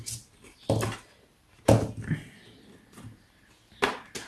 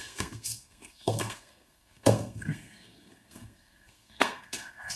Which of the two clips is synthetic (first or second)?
second